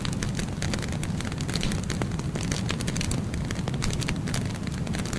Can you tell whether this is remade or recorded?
recorded